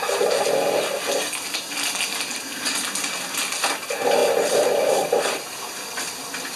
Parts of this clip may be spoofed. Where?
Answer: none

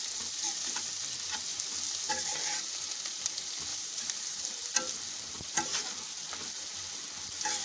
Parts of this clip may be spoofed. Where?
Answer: 3.7-4.5

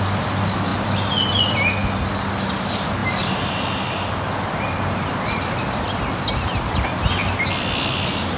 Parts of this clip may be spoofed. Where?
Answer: none

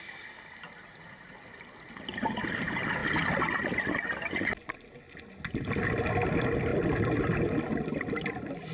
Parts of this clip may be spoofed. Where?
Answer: 6.7-8.7

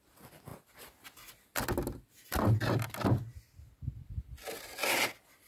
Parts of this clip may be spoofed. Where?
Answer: none

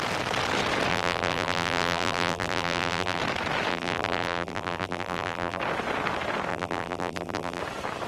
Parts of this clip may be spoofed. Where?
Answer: 0.9-3.2; 3.7-5.6; 6.5-7.6

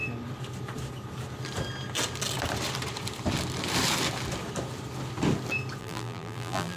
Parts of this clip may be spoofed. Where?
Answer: 5.8-6.8

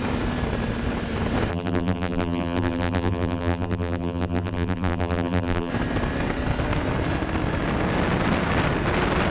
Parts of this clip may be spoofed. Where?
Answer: 1.5-5.7